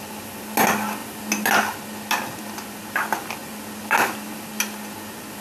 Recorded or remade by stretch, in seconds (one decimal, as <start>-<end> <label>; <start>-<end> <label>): 0.0-5.4 recorded